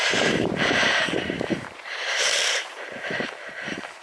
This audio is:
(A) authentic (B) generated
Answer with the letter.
B